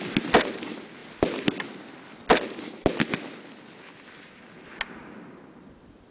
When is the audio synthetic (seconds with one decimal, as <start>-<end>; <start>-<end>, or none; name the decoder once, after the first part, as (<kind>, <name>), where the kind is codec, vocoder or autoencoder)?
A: none